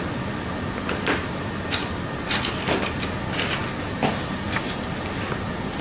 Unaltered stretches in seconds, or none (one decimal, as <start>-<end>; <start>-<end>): 0.0-5.8